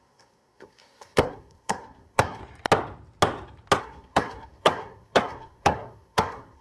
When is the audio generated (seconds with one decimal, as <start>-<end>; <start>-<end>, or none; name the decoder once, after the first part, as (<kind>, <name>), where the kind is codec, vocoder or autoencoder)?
0.0-2.4 (codec, SNAC); 3.8-6.6